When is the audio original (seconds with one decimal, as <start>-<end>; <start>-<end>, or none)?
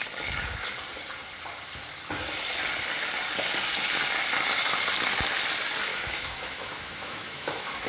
0.0-5.9